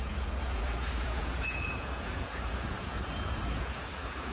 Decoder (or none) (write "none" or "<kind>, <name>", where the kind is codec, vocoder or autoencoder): vocoder, Vocos